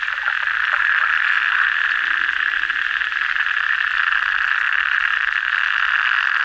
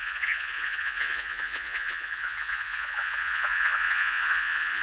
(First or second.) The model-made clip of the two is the second